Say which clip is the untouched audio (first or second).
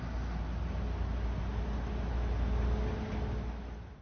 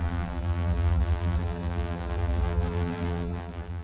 first